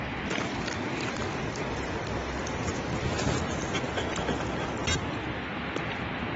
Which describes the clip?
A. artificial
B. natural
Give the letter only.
B